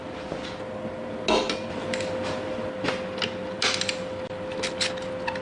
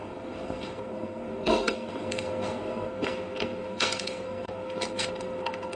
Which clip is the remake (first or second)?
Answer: second